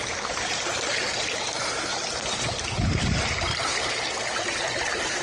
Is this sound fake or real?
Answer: fake